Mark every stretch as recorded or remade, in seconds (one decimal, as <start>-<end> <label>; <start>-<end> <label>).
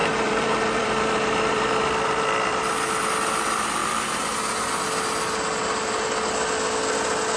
0.0-3.0 remade; 3.0-7.4 recorded